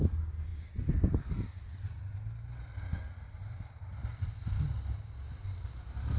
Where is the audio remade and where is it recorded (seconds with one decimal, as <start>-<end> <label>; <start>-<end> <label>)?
0.0-4.0 recorded; 4.0-4.6 remade; 4.6-6.2 recorded